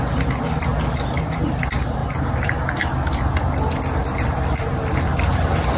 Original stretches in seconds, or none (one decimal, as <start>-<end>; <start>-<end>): 0.0-5.8